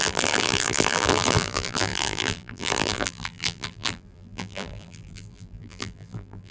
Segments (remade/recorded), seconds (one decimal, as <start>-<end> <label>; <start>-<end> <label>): 0.0-6.5 remade